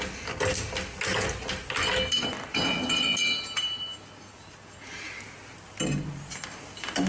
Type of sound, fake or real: real